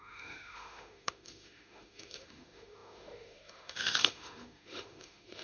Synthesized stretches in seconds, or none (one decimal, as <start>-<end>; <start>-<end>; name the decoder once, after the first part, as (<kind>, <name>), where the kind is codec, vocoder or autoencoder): 0.0-5.4 (autoencoder, DAC-VAE)